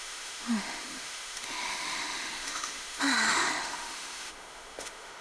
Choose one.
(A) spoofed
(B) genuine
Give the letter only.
A